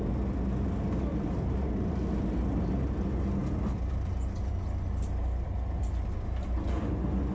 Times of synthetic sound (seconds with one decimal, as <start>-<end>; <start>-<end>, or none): 1.1-2.9